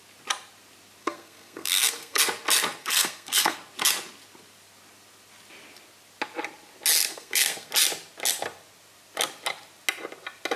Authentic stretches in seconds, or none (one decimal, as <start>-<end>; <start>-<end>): 0.0-1.0; 2.2-2.8; 3.6-7.1; 7.7-10.6